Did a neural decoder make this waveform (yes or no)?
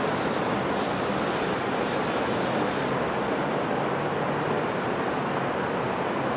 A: yes